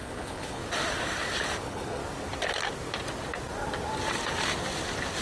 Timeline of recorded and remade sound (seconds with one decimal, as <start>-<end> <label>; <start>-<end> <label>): 0.0-0.6 remade; 0.6-1.6 recorded; 1.6-2.0 remade; 2.0-5.2 recorded

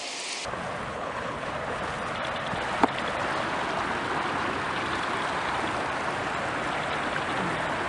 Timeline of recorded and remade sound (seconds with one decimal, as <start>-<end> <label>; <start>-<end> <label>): 0.0-0.9 recorded; 0.9-1.5 remade; 1.5-7.9 recorded